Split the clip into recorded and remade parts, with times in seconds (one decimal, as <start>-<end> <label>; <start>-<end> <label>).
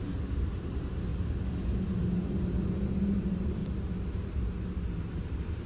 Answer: 0.0-1.1 remade; 1.1-3.2 recorded; 3.2-3.6 remade; 3.6-5.2 recorded; 5.2-5.7 remade